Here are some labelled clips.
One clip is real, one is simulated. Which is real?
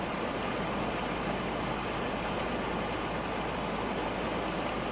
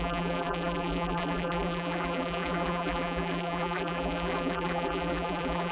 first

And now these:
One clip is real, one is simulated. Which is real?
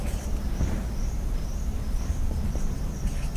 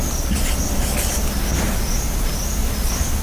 second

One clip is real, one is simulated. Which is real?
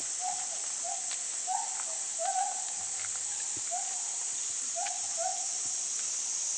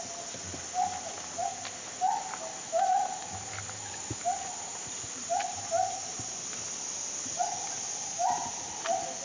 second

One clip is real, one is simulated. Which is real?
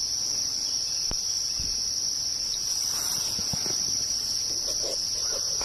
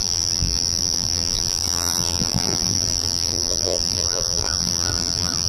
first